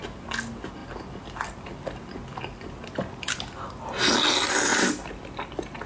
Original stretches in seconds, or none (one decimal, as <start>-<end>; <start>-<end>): 0.0-5.9